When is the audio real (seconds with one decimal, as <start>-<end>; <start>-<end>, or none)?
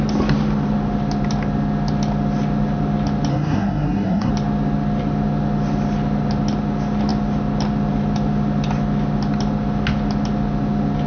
0.0-3.3; 4.3-11.1